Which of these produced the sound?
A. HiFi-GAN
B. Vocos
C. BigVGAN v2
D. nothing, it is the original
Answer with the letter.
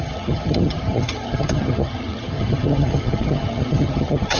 A